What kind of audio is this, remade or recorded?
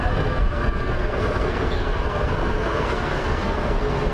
remade